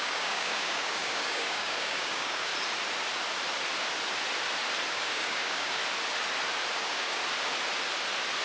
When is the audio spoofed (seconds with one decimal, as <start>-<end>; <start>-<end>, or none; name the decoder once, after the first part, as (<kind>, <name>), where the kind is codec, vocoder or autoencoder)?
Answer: 0.0-2.5 (codec, DAC); 4.9-5.8; 6.8-7.2

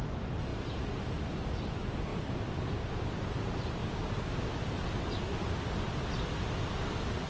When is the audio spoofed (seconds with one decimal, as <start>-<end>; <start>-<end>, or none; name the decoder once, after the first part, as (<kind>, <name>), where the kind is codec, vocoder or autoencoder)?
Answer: 3.8-4.5 (codec, DAC)

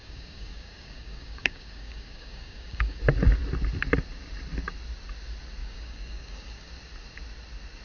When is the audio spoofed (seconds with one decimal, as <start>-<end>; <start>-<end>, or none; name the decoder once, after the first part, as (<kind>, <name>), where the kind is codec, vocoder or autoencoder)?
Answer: 0.0-3.0 (codec, DAC); 5.6-6.7

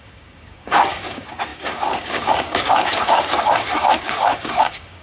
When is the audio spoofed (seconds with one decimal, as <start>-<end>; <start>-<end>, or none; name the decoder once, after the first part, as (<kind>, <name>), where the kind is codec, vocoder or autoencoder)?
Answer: 0.0-5.0 (codec, DAC)

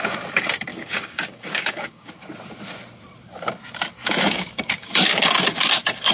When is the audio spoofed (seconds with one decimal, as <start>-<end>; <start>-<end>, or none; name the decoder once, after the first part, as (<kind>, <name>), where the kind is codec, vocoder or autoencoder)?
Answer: 0.7-2.1 (codec, DAC); 4.0-6.1

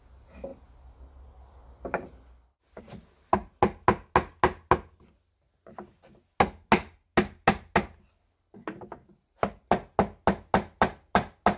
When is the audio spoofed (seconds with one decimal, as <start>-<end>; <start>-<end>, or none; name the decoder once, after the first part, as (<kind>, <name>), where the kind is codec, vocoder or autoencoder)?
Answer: none